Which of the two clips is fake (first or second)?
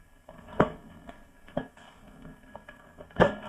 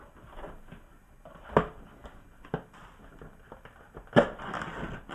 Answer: first